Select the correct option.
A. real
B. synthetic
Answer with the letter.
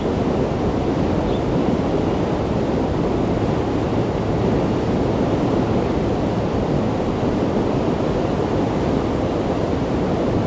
A